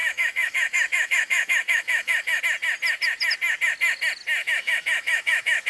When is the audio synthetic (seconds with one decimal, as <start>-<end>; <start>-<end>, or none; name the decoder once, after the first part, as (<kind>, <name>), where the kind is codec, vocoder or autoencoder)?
0.0-2.4 (autoencoder, DAC-VAE); 4.4-5.7